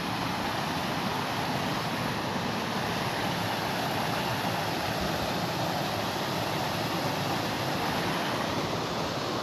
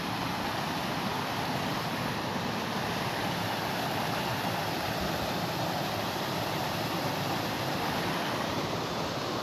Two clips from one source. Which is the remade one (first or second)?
second